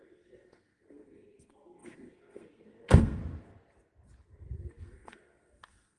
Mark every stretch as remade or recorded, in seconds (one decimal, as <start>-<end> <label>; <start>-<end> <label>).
0.0-3.2 remade; 3.2-4.7 recorded; 4.7-6.0 remade